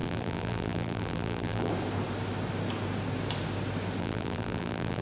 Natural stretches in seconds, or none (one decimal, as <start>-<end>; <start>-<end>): 1.7-4.0